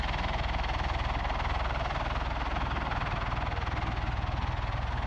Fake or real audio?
real